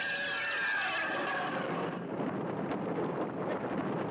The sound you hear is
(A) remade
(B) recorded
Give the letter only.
B